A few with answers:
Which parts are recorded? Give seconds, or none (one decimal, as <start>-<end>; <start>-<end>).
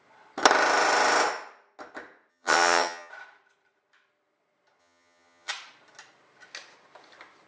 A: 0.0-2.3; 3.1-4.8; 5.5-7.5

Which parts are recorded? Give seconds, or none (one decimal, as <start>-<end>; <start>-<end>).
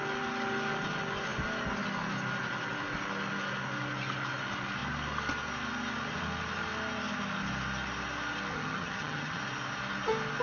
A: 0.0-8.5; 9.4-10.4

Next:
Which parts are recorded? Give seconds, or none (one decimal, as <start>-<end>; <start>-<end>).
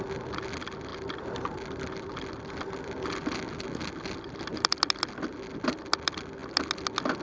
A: 0.0-7.2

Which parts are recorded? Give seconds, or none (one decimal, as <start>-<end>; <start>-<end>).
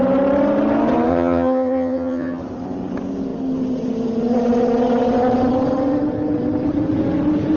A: 0.0-1.1; 2.4-7.6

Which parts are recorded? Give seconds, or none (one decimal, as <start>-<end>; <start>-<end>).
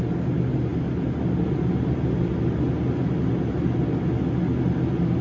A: 0.0-5.2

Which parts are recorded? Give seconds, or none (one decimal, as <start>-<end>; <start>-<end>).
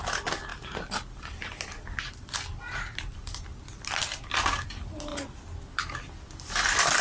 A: 0.0-7.0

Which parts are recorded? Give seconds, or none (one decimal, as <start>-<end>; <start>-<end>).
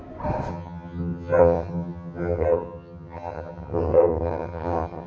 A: 0.0-0.5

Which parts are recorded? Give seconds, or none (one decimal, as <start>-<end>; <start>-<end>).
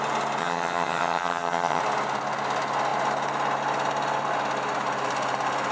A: 0.0-0.4; 1.8-5.7